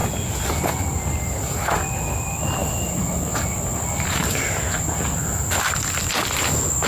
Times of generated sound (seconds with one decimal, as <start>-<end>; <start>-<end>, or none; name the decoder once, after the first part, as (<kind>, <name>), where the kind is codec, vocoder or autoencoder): 0.0-0.5 (vocoder, BigVGAN v2); 2.6-3.2